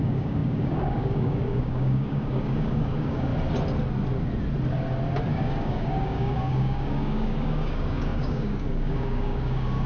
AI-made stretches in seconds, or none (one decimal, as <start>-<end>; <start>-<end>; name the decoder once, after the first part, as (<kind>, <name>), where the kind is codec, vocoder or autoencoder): 0.0-3.3 (codec, DAC); 5.3-9.9